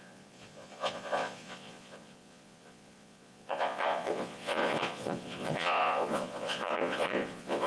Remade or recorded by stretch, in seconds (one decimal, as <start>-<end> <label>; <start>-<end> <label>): 0.0-7.7 remade